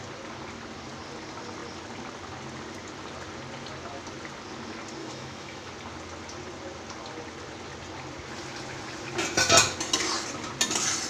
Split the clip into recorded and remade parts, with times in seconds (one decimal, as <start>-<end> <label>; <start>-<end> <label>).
0.0-5.0 recorded; 5.0-5.7 remade; 5.7-11.1 recorded